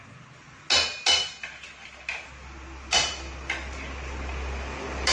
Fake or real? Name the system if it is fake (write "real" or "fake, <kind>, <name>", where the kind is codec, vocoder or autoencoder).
real